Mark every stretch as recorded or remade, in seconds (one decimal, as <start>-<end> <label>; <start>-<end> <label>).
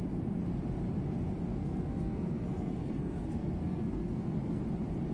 0.0-1.5 recorded; 1.5-4.6 remade; 4.6-5.1 recorded